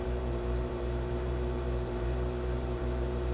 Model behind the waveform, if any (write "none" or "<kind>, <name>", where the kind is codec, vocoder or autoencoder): vocoder, BigVGAN v2